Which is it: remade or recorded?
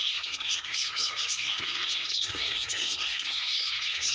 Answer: remade